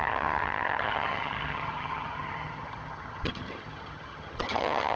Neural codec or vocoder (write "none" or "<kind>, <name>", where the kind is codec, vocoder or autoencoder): vocoder, HiFi-GAN